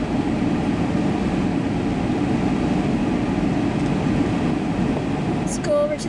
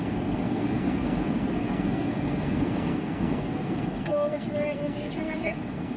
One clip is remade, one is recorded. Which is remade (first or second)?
second